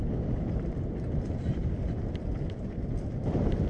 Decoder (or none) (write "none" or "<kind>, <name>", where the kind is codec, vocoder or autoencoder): none